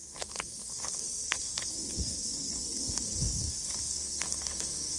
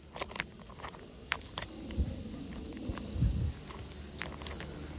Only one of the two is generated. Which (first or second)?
first